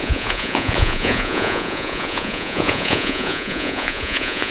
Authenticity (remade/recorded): remade